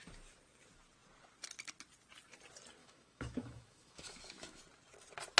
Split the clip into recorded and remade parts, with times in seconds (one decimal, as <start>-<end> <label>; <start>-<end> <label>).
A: 0.0-2.8 recorded; 2.8-4.6 remade; 4.6-5.4 recorded